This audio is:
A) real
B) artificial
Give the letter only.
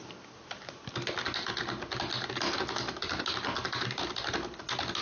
A